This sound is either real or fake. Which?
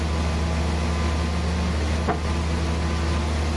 real